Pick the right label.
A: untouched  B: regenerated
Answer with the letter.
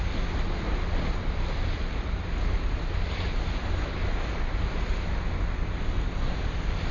A